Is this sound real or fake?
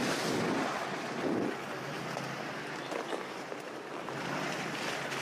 real